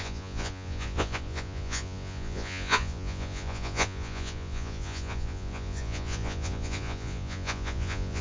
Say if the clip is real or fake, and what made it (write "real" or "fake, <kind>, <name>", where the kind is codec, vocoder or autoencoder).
fake, vocoder, Vocos